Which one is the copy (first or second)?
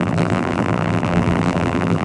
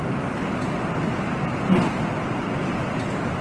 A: first